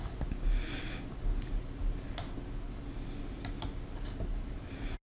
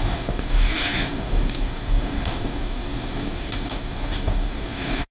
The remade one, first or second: second